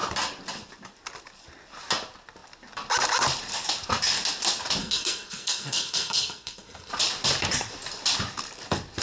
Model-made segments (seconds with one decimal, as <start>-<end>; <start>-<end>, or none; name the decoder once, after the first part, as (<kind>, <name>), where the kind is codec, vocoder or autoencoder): 4.8-6.9 (codec, SNAC)